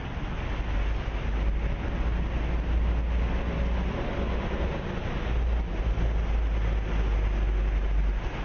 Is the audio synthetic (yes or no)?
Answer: no